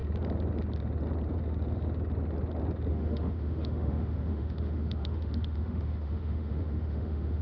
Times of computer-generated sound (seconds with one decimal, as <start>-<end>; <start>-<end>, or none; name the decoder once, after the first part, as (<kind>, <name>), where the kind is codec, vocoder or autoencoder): 2.9-7.4 (autoencoder, DAC-VAE)